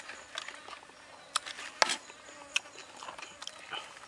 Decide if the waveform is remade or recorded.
recorded